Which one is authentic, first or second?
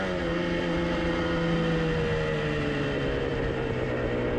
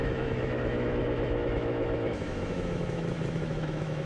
first